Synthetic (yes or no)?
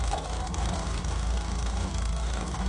yes